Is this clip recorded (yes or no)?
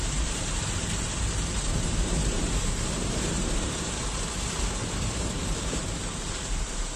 no